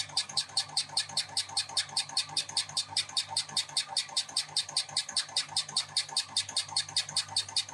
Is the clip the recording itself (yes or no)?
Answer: yes